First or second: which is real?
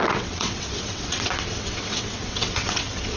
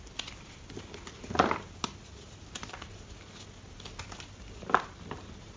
second